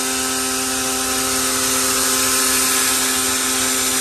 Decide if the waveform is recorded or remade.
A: recorded